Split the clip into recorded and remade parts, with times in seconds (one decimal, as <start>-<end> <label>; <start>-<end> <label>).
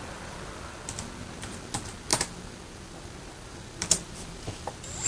0.0-5.1 recorded